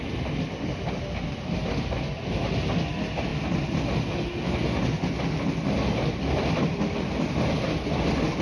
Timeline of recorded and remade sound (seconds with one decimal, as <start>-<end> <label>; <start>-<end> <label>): 0.0-8.4 recorded